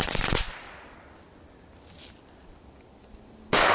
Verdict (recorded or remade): recorded